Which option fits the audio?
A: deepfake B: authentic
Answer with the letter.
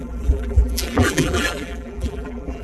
A